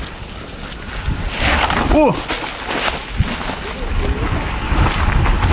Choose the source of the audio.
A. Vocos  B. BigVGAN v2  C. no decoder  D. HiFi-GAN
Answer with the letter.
C